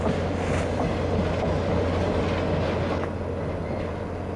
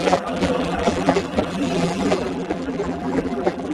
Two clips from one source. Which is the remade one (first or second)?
second